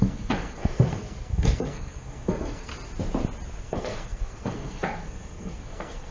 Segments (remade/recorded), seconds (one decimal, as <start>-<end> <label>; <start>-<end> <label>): 0.0-2.7 remade; 2.7-3.6 recorded; 3.6-6.1 remade